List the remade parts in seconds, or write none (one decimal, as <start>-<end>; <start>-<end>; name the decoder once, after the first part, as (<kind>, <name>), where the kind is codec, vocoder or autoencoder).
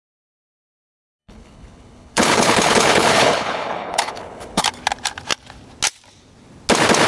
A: 1.2-4.6 (codec, HILCodec)